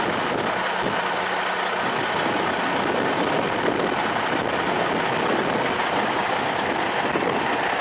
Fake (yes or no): no